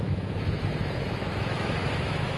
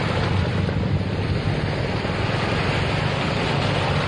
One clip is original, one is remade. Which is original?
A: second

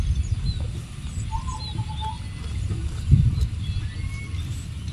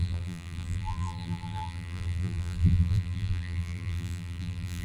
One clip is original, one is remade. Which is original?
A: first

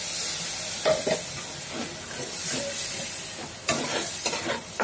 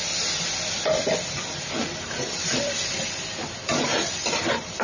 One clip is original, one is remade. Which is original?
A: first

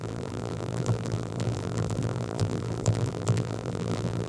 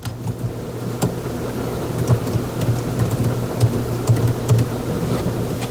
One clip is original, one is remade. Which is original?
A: second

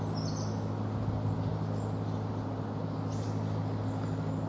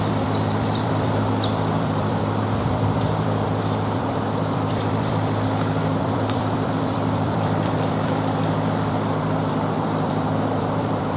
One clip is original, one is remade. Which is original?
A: first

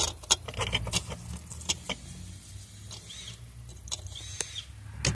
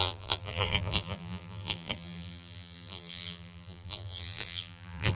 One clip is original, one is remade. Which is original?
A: first